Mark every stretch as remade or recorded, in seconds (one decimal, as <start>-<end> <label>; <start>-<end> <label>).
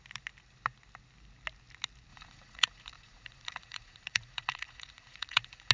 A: 0.0-2.1 recorded; 2.1-5.7 remade